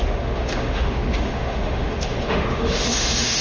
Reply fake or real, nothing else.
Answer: fake